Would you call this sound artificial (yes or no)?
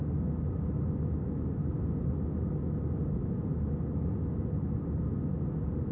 no